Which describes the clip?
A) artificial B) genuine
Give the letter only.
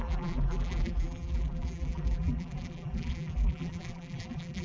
A